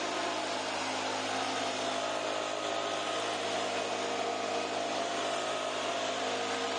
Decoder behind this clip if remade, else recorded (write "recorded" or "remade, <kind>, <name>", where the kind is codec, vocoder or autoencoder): recorded